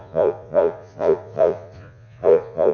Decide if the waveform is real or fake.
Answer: fake